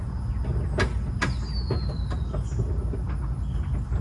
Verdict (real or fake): real